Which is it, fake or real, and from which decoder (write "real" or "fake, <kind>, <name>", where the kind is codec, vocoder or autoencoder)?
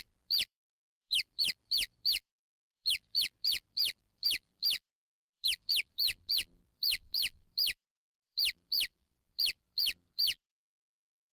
fake, vocoder, BigVGAN v2